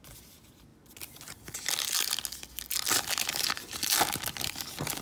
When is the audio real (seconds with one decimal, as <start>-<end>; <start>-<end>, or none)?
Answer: 0.0-5.0

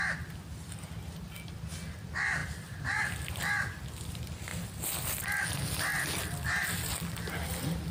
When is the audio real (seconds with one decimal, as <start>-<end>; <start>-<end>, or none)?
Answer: 0.0-2.4; 4.1-4.5; 5.2-7.9

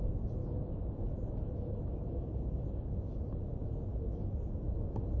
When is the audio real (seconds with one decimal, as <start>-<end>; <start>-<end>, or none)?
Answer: 0.0-0.4; 3.5-3.9; 4.5-5.2

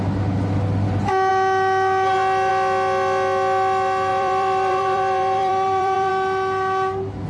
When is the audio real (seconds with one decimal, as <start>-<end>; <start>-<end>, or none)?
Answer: 0.0-4.1; 6.1-7.3

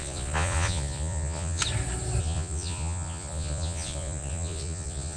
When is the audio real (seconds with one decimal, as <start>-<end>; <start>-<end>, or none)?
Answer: 1.6-2.2

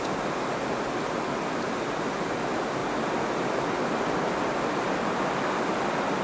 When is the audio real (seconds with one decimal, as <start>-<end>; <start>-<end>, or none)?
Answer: 0.0-6.2